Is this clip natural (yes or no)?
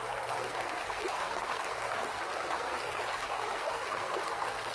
no